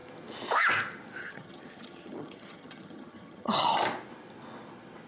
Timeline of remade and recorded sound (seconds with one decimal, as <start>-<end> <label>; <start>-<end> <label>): 0.0-1.2 recorded; 1.2-3.8 remade; 3.8-5.1 recorded